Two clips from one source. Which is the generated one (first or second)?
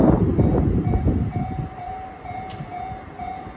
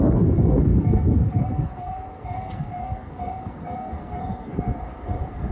second